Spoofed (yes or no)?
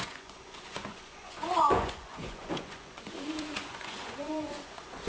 yes